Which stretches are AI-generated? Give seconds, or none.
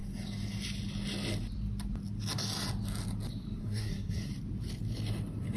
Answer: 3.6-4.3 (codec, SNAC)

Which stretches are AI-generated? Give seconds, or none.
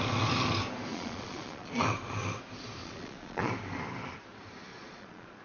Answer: 0.9-1.7 (vocoder, Vocos); 2.8-3.5; 4.7-5.4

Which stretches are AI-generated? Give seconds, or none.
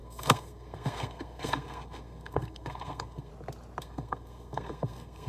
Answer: 0.0-3.3 (codec, SNAC); 3.8-5.3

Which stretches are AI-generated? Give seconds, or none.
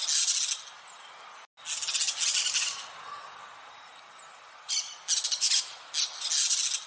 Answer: none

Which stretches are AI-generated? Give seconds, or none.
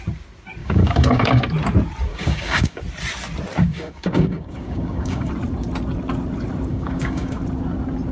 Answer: 0.6-1.4 (codec, DAC); 2.1-2.8; 3.7-5.3; 6.7-7.4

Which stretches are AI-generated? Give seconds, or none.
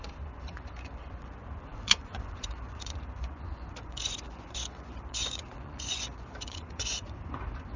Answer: 0.0-7.8 (vocoder, Vocos)